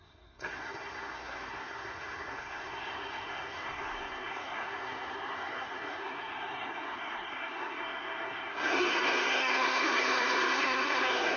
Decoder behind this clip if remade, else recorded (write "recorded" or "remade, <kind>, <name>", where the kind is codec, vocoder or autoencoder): remade, codec, SNAC